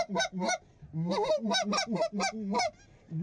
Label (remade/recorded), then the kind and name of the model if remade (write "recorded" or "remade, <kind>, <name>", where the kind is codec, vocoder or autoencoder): recorded